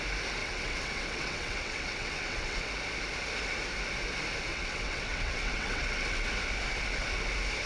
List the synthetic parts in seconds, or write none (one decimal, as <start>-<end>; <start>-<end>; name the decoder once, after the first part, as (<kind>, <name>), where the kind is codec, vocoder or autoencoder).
0.4-2.7 (vocoder, WaveNeXt); 4.5-6.3